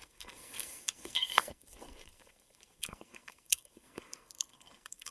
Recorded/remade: remade